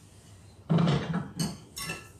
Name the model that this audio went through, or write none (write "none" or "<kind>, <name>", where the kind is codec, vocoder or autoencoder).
none